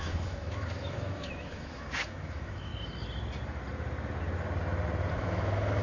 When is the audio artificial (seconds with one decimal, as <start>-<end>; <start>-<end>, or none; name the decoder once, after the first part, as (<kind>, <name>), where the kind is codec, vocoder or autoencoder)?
0.0-2.7 (autoencoder, DAC-VAE); 5.1-5.8